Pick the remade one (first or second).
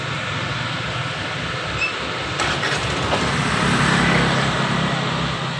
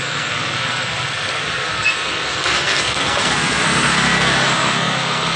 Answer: second